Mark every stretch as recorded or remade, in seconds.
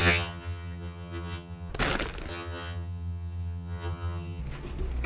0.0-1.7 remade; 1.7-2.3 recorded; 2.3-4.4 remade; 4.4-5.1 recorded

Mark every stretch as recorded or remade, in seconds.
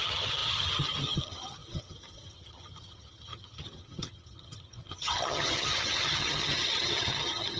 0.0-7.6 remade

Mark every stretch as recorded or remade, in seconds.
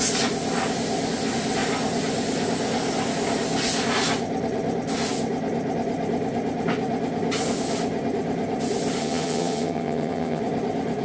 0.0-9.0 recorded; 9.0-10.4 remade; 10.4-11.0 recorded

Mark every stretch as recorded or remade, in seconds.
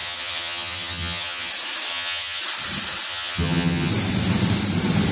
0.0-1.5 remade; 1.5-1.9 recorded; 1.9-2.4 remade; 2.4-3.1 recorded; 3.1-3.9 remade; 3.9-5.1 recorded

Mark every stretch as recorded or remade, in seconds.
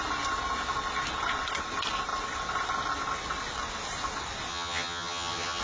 0.0-4.5 recorded; 4.5-5.6 remade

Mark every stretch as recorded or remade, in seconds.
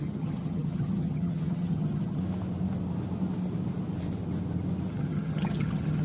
0.0-2.2 remade; 2.2-4.9 recorded; 4.9-6.0 remade